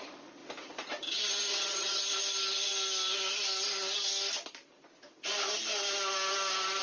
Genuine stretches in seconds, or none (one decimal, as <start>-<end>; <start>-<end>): 0.0-1.5; 2.0-6.8